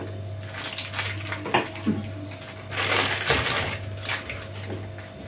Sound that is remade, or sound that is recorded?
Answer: recorded